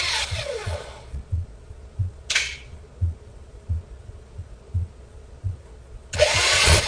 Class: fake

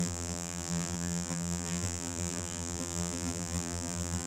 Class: fake